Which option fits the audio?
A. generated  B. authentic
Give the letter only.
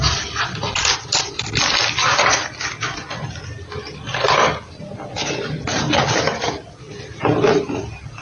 B